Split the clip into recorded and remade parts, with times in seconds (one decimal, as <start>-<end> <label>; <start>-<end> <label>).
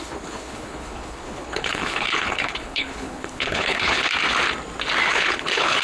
0.0-4.1 remade; 4.1-5.1 recorded; 5.1-5.8 remade